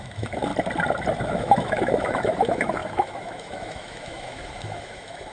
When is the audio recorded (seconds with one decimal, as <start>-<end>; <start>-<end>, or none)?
0.5-1.2